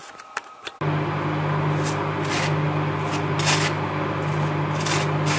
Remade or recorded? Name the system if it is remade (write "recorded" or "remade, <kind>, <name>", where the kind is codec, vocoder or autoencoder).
recorded